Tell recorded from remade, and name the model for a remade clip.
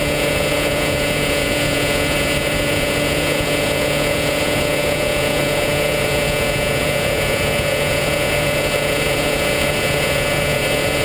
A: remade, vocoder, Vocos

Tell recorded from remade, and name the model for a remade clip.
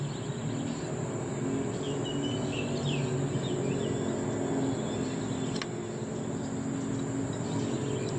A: recorded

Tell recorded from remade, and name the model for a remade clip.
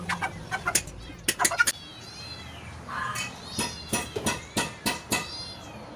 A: recorded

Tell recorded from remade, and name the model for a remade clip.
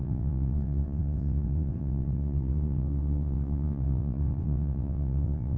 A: remade, vocoder, WaveNeXt